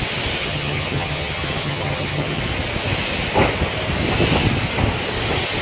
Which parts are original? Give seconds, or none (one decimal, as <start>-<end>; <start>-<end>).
0.0-0.4; 2.4-5.6